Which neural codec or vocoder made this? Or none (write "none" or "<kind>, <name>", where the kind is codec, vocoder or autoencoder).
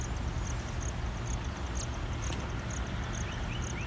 none